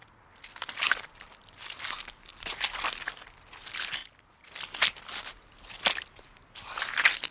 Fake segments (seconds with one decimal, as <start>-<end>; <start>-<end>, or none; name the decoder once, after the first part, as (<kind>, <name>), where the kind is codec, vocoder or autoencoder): 4.0-4.5 (vocoder, BigVGAN v2)